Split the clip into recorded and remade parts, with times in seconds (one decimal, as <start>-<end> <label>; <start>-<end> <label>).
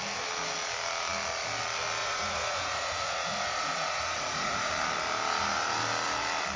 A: 0.0-2.0 recorded; 2.0-4.7 remade; 4.7-6.6 recorded